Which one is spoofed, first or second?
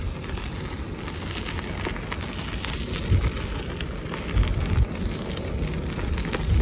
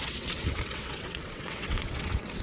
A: second